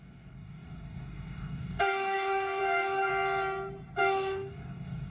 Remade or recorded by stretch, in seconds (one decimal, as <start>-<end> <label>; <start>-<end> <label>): 0.0-3.1 remade; 3.1-4.0 recorded; 4.0-5.1 remade